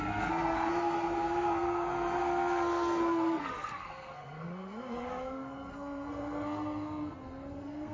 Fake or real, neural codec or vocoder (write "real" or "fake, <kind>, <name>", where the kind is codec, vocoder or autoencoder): fake, codec, SNAC